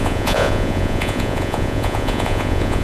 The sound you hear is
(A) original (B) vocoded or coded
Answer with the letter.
B